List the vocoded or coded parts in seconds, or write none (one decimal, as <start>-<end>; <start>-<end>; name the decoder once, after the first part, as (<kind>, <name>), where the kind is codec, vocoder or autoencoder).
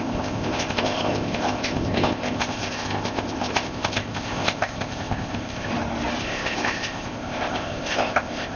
0.0-5.7 (codec, ZipCodec); 6.2-8.6